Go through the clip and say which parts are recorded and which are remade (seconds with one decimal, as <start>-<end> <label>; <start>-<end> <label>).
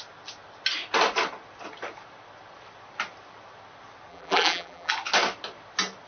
0.0-4.1 recorded; 4.1-4.9 remade; 4.9-6.1 recorded